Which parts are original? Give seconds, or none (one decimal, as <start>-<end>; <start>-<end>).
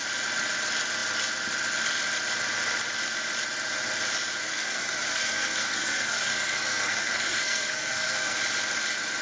0.0-4.4; 8.4-9.2